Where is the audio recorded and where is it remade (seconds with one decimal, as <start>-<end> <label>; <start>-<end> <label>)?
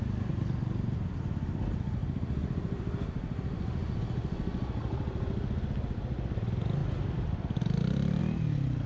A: 0.0-6.8 recorded; 6.8-8.2 remade; 8.2-8.9 recorded